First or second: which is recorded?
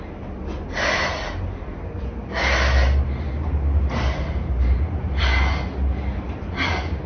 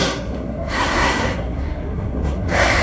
first